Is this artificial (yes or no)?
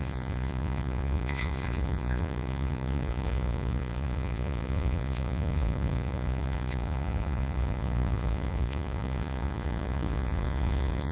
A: yes